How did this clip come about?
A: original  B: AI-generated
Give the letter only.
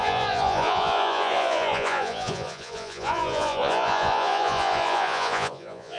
B